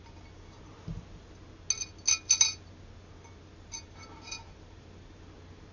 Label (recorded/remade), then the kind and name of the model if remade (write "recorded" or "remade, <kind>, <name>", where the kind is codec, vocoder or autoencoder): recorded